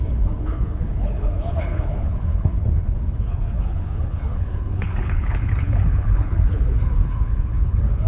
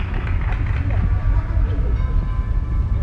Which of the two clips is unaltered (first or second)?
second